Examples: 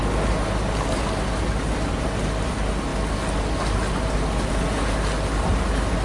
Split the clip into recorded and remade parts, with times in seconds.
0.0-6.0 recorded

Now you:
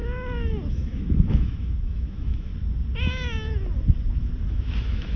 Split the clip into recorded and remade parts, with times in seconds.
0.0-0.7 recorded; 0.7-2.5 remade; 2.5-4.4 recorded; 4.4-5.2 remade

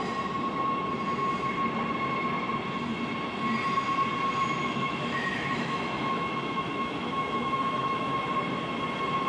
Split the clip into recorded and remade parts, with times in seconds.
0.0-4.6 recorded; 4.6-8.2 remade; 8.2-9.3 recorded

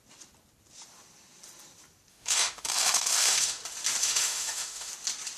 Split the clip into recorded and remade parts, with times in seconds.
0.0-2.1 recorded; 2.1-3.6 remade; 3.6-4.0 recorded; 4.0-4.9 remade; 4.9-5.4 recorded

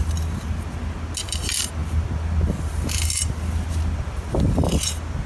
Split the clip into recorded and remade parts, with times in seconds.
0.0-5.3 recorded

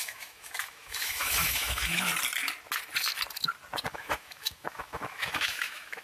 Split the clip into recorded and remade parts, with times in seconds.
0.0-2.1 remade; 2.1-3.9 recorded; 3.9-6.0 remade

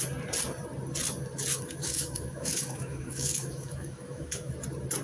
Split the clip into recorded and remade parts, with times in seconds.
0.0-1.5 recorded; 1.5-4.5 remade; 4.5-5.0 recorded

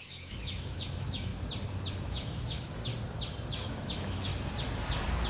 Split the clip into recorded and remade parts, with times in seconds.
0.0-1.3 remade; 1.3-1.9 recorded; 1.9-2.9 remade; 2.9-3.5 recorded; 3.5-4.3 remade; 4.3-5.3 recorded